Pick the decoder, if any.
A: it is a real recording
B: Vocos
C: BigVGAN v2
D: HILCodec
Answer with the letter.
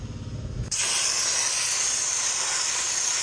A